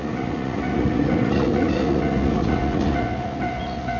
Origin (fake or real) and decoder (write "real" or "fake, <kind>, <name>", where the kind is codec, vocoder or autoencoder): fake, vocoder, Vocos